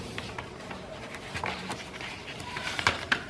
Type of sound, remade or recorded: recorded